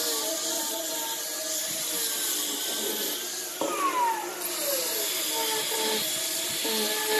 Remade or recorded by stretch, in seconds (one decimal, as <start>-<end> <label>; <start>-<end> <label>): 0.0-7.2 recorded